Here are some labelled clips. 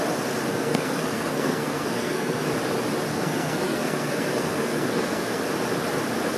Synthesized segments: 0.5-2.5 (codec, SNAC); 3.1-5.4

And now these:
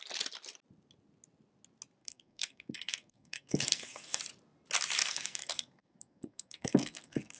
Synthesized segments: 2.0-4.2 (codec, SNAC); 5.0-7.4

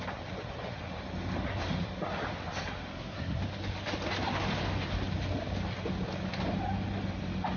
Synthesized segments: 2.9-3.4 (codec, SNAC)

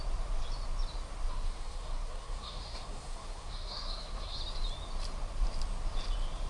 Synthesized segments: 1.3-4.4 (codec, SNAC)

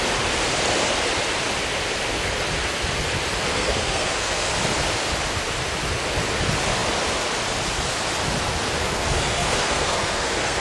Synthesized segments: 3.5-4.5 (codec, SNAC); 8.8-10.6

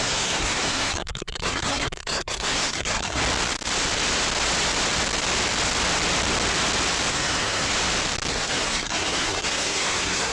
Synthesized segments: 0.0-3.2 (codec, SNAC); 7.1-7.7; 8.3-10.3

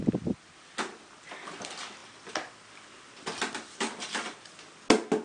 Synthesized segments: none

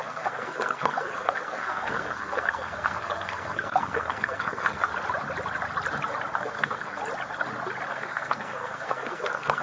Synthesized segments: 0.0-4.9 (codec, SNAC); 6.3-7.0; 7.9-9.6